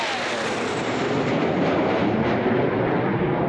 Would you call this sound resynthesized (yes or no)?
no